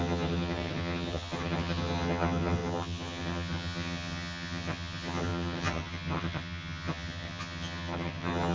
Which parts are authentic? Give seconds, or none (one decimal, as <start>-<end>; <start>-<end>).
none